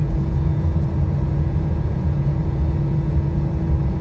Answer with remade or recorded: remade